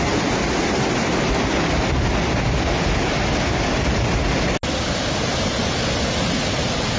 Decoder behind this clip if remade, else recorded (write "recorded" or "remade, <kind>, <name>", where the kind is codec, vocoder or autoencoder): recorded